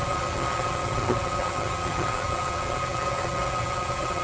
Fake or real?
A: fake